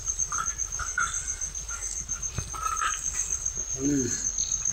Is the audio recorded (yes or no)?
yes